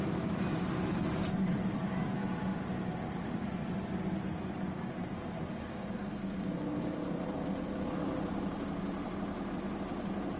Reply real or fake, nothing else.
real